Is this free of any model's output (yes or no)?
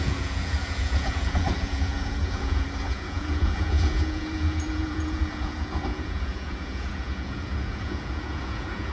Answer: no